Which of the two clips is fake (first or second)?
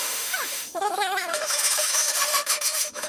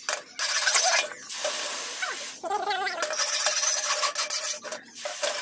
first